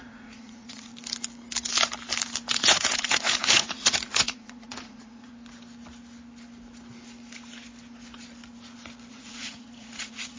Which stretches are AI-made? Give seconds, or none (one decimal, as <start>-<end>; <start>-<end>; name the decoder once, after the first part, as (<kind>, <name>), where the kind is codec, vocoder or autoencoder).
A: 0.0-0.9 (vocoder, Vocos); 2.5-5.3; 9.1-10.4